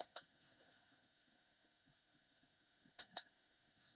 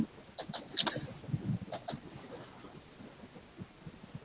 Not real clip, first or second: first